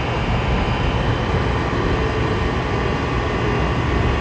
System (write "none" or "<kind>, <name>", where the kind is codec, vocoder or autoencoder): none